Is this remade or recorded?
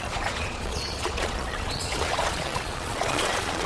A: remade